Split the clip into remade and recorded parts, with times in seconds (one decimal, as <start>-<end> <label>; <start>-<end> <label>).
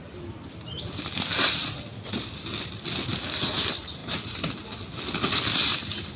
0.0-6.2 recorded